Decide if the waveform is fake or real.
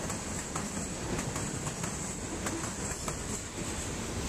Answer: real